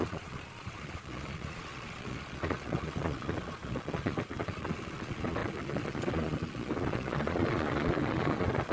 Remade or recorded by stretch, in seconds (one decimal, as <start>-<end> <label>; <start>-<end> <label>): 0.0-8.7 remade

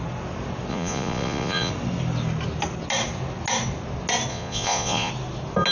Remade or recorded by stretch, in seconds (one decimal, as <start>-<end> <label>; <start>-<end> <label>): 0.0-0.7 recorded; 0.7-1.7 remade; 1.7-4.3 recorded; 4.3-5.1 remade; 5.1-5.7 recorded